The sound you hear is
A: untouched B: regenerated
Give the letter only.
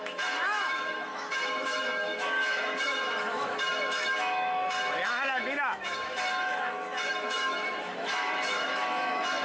B